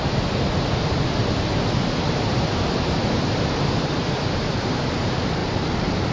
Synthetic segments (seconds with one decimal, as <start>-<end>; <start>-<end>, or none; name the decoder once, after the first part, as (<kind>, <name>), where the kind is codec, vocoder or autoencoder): 5.4-6.1 (vocoder, BigVGAN v2)